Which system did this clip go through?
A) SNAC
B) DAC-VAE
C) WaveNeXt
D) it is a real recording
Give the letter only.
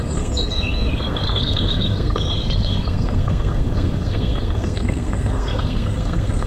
A